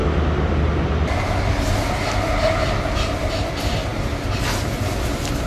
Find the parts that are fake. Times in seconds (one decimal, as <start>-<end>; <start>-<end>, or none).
0.0-0.5